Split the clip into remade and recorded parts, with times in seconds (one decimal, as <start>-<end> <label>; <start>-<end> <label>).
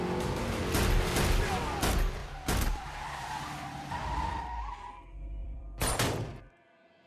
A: 0.0-2.2 recorded; 2.2-4.3 remade; 4.3-5.4 recorded; 5.4-6.4 remade; 6.4-7.1 recorded